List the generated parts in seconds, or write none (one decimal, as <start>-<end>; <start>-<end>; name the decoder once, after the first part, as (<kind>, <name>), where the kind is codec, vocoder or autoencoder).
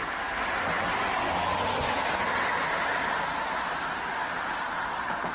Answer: none